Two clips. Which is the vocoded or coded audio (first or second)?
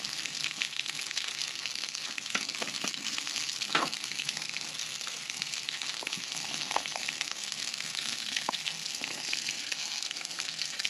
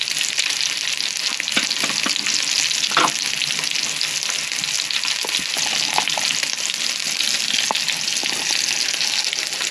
first